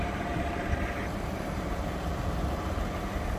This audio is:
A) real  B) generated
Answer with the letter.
B